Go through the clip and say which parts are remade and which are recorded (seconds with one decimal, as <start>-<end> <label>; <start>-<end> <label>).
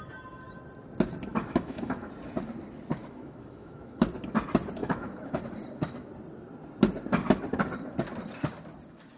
0.0-1.3 recorded; 1.3-2.1 remade; 2.1-3.0 recorded; 3.0-4.0 remade; 4.0-4.8 recorded; 4.8-5.4 remade; 5.4-9.2 recorded